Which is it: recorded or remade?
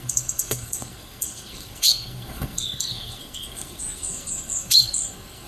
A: remade